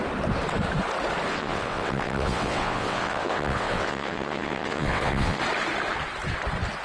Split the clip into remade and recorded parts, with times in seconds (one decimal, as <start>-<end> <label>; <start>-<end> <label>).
0.0-1.3 recorded; 1.3-5.4 remade; 5.4-6.8 recorded